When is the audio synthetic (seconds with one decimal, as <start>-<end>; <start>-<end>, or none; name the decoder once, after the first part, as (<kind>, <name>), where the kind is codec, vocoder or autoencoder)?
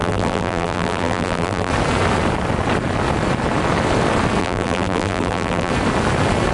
0.0-1.7 (vocoder, BigVGAN v2); 4.4-5.7